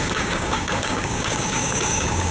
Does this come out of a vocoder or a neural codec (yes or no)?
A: yes